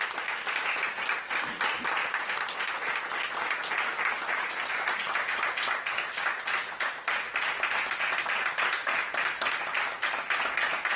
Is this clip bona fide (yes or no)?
yes